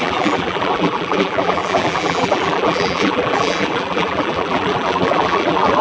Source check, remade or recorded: remade